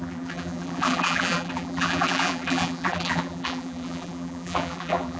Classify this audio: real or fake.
fake